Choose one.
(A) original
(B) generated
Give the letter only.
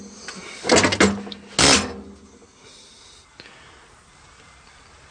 A